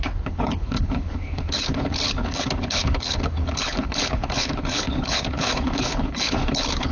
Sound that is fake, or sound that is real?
fake